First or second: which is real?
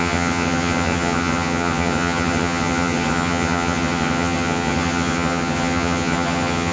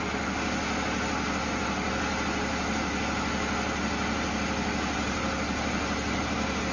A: second